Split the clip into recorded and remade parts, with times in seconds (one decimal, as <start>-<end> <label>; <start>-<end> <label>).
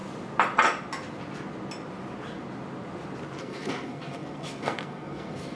0.0-3.4 recorded; 3.4-5.6 remade